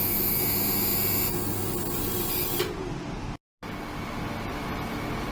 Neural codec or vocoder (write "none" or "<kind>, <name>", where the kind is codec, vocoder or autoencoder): none